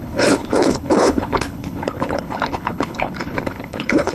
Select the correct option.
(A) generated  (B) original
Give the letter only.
A